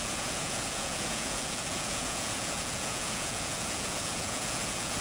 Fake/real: fake